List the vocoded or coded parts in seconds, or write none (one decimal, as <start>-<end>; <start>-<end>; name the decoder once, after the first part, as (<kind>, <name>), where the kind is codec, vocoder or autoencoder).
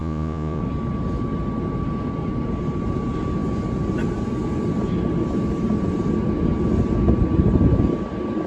0.0-0.6 (vocoder, Vocos)